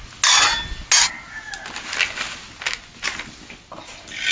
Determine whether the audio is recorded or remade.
recorded